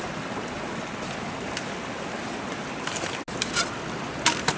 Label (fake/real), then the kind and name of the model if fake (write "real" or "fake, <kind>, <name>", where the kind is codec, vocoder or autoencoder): real